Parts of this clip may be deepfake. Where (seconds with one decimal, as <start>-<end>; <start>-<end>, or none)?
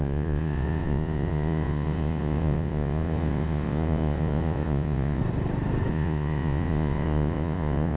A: 0.0-5.2; 5.9-8.0